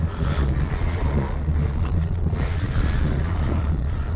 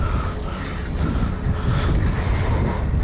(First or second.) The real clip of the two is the second